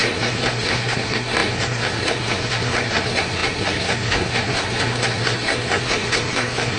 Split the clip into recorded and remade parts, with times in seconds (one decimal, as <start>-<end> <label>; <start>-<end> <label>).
0.0-6.8 remade